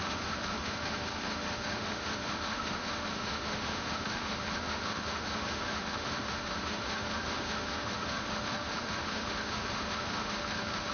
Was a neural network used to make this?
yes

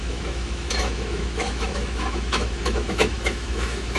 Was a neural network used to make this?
yes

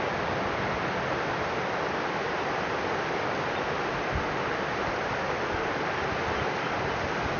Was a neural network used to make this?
no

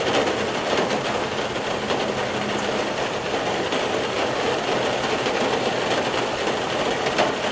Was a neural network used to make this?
no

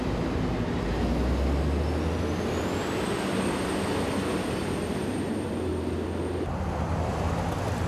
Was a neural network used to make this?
no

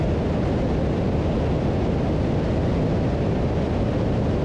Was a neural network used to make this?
no